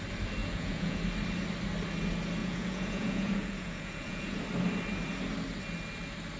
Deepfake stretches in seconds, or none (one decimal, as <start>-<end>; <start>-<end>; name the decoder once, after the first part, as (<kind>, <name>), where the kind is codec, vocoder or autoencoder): 0.4-1.0 (vocoder, Vocos); 2.4-4.4